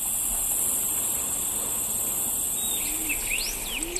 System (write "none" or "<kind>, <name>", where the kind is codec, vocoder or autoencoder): none